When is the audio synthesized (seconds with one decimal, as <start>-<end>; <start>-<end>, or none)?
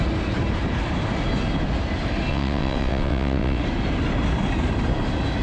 2.3-3.6